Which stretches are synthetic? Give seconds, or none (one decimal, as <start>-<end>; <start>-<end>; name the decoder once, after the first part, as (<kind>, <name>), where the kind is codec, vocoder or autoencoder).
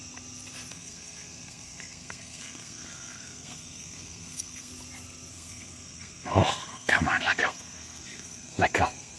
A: 0.7-4.7 (codec, SNAC); 5.3-9.2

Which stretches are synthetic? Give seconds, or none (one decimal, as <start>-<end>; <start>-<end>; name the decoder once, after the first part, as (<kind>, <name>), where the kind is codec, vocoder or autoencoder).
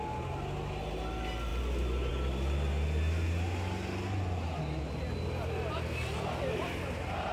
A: none